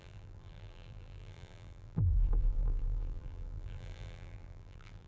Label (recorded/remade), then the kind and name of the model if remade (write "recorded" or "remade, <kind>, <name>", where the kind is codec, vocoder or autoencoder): remade, vocoder, BigVGAN v2